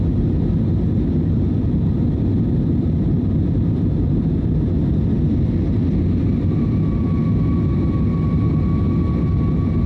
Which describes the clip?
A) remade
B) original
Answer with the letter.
B